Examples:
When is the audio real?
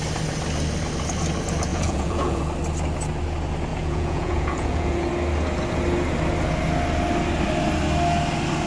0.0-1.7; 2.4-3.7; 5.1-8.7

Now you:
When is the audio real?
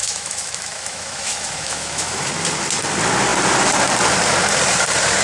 2.3-5.2